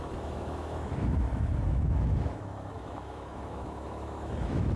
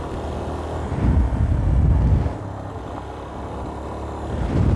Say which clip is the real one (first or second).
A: second